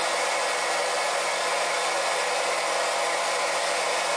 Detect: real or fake real